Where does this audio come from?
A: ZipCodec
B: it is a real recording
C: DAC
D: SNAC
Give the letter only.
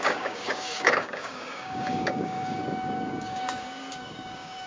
C